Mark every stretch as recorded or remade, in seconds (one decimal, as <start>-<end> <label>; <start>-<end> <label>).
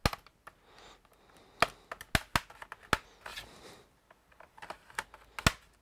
0.0-3.3 recorded; 3.3-4.7 remade; 4.7-5.8 recorded